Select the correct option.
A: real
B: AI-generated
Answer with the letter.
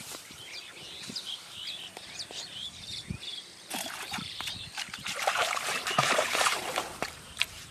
B